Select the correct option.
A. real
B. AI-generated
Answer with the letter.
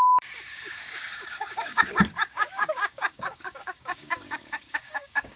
B